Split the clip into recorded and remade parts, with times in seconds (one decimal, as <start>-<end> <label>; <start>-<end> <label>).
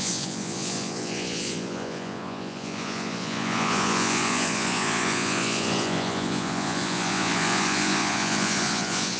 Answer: 0.0-9.2 remade